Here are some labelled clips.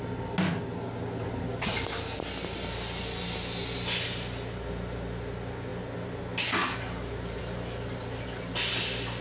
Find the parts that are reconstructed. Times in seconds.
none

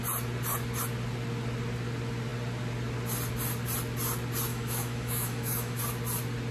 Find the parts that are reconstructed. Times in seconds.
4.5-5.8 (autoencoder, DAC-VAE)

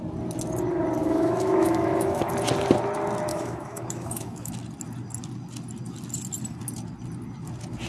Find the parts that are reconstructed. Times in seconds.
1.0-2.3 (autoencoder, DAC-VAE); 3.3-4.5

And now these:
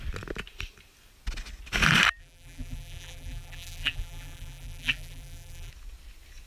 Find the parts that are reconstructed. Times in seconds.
2.2-5.7 (vocoder, BigVGAN v2)